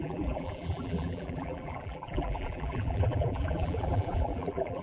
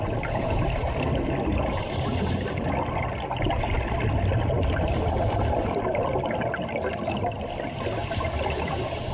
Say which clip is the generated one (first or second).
first